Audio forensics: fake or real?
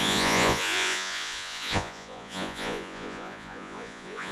fake